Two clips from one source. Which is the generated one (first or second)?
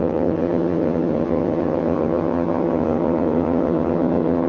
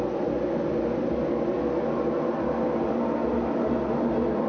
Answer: first